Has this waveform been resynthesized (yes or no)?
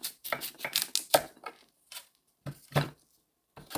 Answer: no